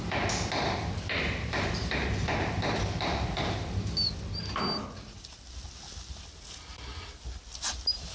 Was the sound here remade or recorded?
recorded